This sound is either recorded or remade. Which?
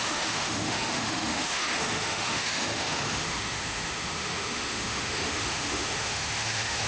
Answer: remade